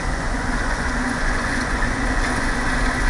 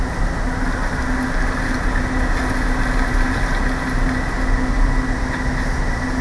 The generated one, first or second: first